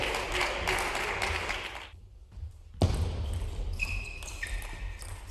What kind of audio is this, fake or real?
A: real